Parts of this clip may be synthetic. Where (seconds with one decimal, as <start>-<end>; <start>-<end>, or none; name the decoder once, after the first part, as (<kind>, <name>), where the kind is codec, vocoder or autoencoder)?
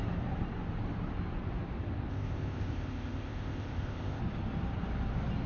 2.1-4.2 (codec, ZipCodec)